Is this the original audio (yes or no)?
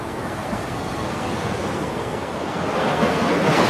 no